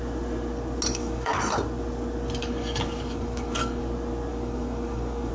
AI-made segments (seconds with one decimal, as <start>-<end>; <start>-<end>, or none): 0.9-1.4; 2.4-3.8; 4.3-5.3